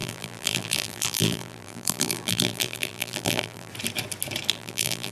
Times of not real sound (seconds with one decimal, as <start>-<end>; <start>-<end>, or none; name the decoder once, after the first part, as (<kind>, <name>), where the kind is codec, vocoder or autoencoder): 0.0-3.7 (vocoder, BigVGAN v2); 4.5-5.1